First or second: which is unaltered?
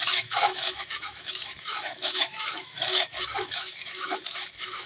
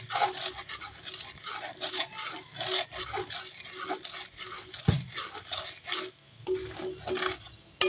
second